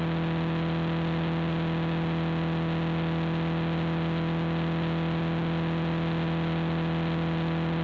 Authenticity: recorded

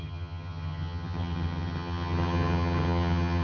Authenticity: remade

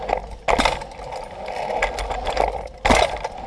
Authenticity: recorded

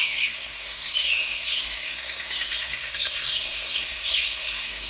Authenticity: remade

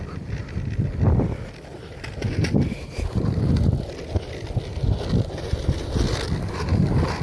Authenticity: recorded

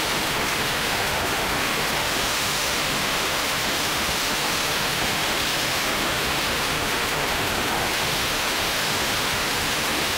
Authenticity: remade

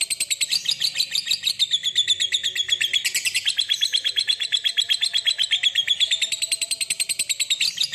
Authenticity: recorded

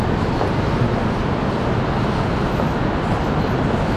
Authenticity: recorded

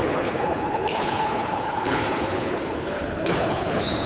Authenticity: remade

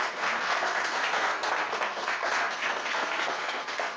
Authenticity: remade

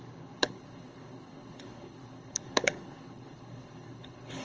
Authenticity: remade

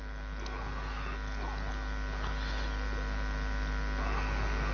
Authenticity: recorded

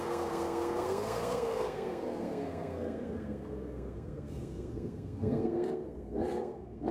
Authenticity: remade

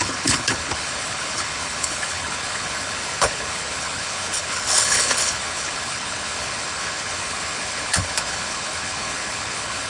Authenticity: remade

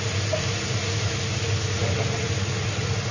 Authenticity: recorded